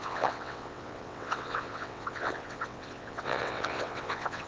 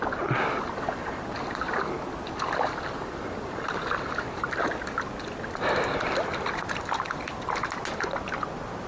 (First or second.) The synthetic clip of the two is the first